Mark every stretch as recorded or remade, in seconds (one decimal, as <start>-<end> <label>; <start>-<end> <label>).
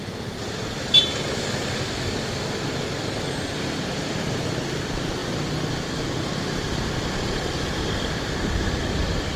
0.0-9.4 recorded